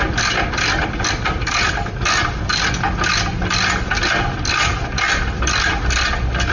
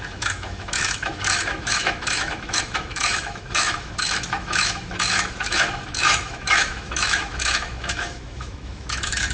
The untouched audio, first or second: first